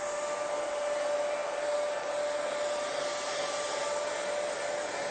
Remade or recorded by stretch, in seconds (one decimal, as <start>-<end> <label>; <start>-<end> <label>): 0.0-5.1 recorded